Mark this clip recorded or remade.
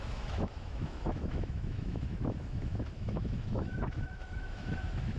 remade